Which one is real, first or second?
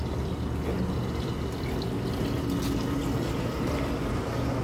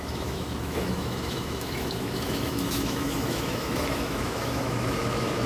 first